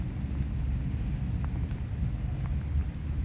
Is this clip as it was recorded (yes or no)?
yes